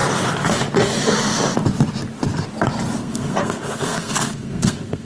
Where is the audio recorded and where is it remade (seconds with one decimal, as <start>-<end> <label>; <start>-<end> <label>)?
0.0-3.0 recorded; 3.0-5.0 remade